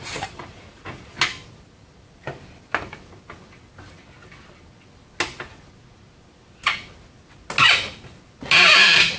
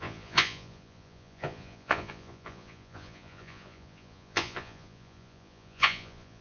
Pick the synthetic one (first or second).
second